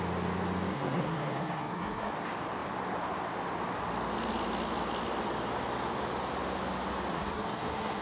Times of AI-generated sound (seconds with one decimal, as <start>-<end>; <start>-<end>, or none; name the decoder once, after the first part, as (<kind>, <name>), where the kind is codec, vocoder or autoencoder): 0.7-2.1 (codec, SNAC); 7.1-8.0

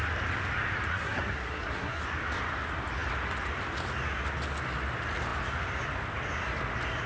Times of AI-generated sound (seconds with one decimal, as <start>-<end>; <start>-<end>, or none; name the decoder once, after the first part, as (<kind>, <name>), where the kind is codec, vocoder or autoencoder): 0.9-2.0 (codec, SNAC)